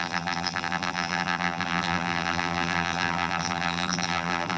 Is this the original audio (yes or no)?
no